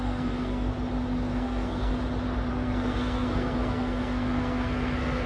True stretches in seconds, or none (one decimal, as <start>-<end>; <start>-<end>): 0.7-1.3; 1.9-2.5